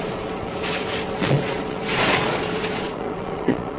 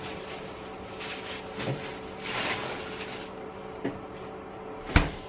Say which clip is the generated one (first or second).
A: first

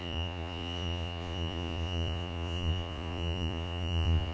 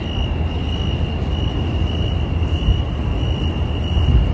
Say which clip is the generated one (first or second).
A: first